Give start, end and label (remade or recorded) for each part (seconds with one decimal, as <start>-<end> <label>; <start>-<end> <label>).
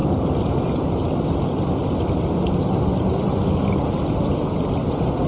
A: 0.0-5.3 recorded